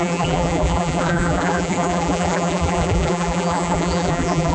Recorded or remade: remade